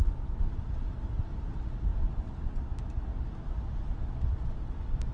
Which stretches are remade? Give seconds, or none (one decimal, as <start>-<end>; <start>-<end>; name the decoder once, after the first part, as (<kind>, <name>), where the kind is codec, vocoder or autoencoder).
none